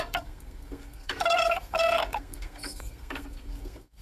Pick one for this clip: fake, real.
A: fake